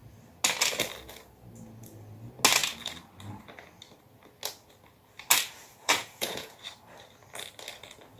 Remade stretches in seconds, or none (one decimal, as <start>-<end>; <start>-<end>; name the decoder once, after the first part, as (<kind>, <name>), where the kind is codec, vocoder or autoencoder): 5.8-6.5 (vocoder, Vocos)